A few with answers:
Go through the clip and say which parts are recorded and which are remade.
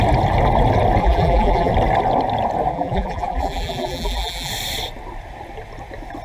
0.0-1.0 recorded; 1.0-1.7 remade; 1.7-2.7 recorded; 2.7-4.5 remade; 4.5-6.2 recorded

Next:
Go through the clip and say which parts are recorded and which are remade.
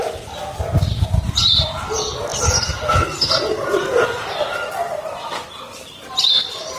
0.0-2.3 recorded; 2.3-6.8 remade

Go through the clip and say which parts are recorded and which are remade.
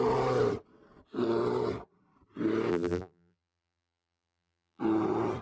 0.0-2.7 recorded; 2.7-4.8 remade; 4.8-5.4 recorded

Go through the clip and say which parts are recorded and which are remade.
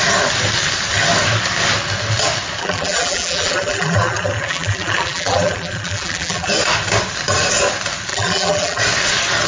0.0-2.6 recorded; 2.6-6.5 remade; 6.5-8.1 recorded; 8.1-8.8 remade; 8.8-9.5 recorded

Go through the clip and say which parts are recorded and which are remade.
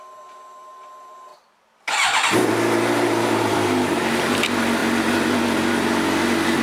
0.0-6.6 remade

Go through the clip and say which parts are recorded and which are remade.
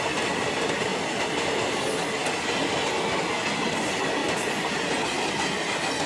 0.0-6.1 recorded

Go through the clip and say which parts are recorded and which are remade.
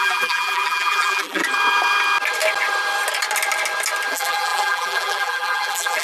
0.0-1.4 remade; 1.4-4.1 recorded; 4.1-6.0 remade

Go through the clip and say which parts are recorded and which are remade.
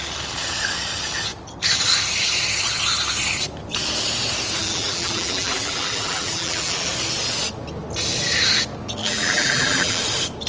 0.0-4.6 recorded; 4.6-6.9 remade; 6.9-9.0 recorded; 9.0-10.0 remade; 10.0-10.5 recorded